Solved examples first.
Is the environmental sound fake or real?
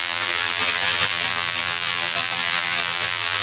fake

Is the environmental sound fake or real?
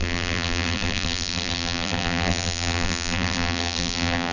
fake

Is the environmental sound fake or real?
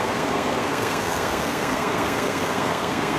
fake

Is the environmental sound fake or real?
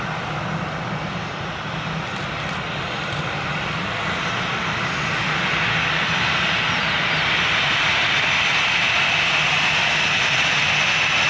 real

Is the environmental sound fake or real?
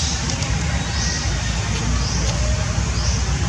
real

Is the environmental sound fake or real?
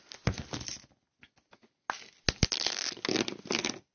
real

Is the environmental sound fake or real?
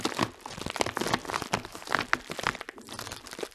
real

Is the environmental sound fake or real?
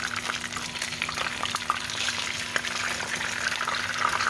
real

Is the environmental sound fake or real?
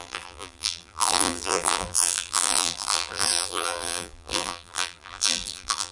fake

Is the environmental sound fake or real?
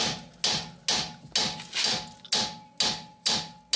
real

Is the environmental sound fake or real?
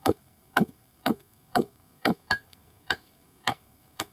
fake